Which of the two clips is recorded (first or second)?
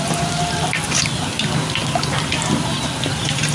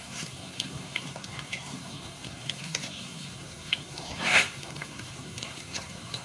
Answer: first